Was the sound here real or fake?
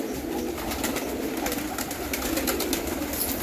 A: real